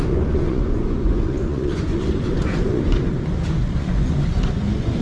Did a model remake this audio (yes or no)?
yes